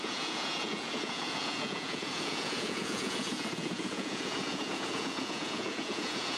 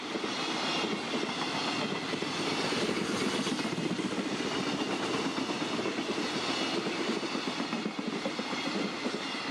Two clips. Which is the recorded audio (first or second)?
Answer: second